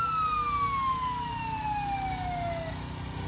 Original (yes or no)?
yes